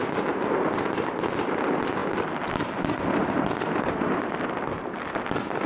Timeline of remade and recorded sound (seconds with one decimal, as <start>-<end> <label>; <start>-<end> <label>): 0.0-5.7 recorded